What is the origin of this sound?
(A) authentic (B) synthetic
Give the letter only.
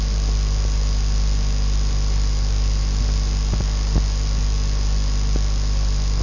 A